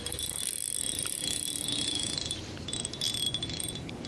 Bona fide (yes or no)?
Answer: yes